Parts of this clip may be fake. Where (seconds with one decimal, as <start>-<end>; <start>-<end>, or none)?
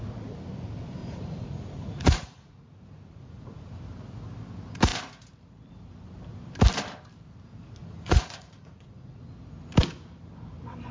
1.0-3.7; 7.8-9.2